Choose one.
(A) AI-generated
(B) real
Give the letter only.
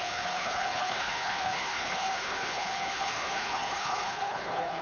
A